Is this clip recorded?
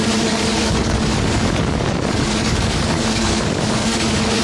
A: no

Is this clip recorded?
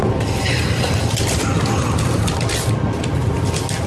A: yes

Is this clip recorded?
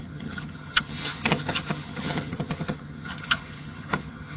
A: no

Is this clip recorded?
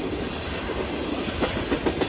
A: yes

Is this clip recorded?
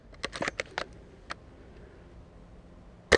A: yes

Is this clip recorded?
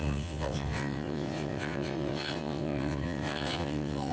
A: no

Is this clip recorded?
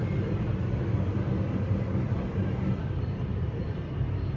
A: no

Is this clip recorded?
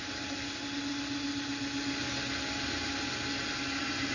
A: yes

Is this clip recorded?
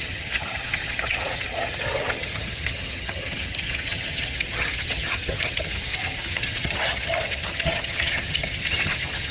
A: no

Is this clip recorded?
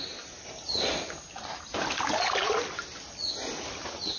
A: yes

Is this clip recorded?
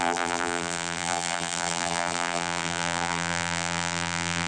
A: no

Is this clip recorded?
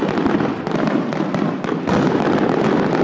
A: yes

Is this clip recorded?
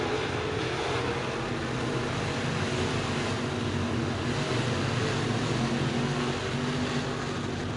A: yes